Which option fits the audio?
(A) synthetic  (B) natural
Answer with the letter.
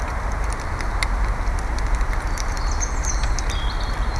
A